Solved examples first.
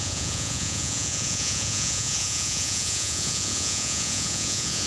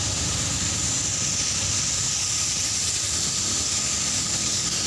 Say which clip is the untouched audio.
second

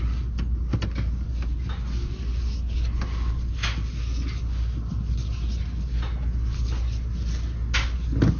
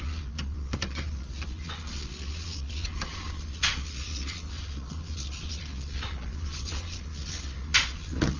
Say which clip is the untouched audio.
first